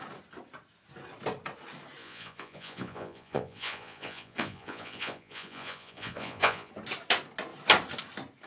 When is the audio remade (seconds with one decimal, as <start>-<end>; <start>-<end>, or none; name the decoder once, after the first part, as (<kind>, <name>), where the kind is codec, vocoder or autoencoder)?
2.0-6.7 (vocoder, Vocos)

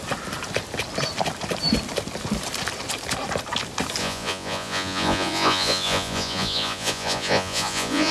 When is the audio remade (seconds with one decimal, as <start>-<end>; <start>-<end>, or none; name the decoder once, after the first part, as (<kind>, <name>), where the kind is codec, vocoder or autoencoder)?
4.0-8.1 (vocoder, Vocos)

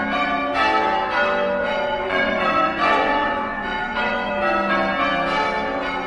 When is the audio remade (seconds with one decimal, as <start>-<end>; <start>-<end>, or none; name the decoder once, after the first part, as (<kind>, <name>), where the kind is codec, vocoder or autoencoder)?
1.6-4.3 (vocoder, Vocos)

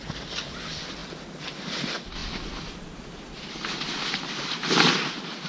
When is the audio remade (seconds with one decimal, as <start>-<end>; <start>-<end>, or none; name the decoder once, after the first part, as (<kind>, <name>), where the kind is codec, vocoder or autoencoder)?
none